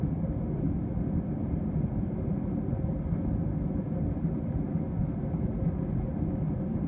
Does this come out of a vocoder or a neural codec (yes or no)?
no